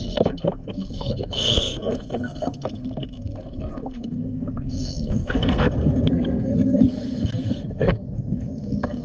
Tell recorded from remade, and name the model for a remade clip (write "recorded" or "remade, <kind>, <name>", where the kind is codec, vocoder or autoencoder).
remade, codec, SNAC